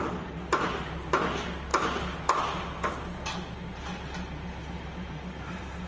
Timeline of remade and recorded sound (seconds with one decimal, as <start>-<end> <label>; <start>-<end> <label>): 0.0-5.9 recorded